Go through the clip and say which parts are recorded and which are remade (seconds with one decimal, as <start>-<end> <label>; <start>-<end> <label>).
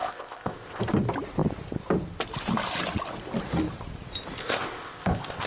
0.0-0.8 remade; 0.8-4.4 recorded; 4.4-5.5 remade